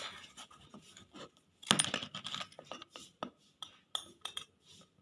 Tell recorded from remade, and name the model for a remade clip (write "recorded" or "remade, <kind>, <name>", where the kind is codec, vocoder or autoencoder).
recorded